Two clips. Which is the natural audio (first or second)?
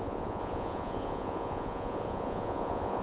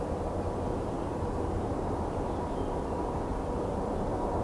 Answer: second